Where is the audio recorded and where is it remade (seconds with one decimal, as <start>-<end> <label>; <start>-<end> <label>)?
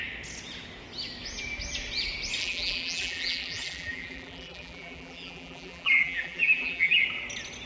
0.0-2.4 recorded; 2.4-7.0 remade; 7.0-7.7 recorded